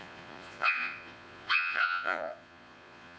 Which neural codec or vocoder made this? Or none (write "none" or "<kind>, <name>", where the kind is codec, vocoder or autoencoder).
vocoder, Vocos